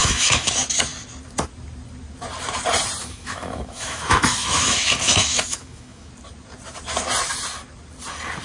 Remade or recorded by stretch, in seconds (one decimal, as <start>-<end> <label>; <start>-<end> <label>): 0.0-0.5 remade; 0.5-3.0 recorded; 3.0-6.1 remade; 6.1-8.4 recorded